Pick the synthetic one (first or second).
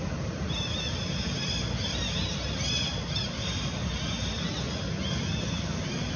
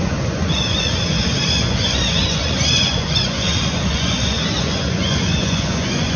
second